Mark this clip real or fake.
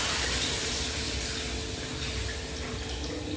real